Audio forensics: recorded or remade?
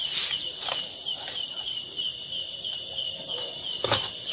recorded